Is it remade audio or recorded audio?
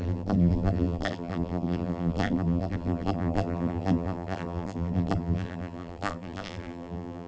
remade